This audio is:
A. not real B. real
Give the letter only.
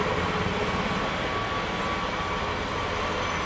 B